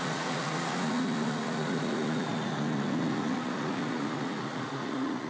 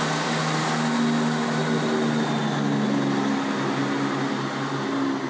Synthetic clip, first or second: first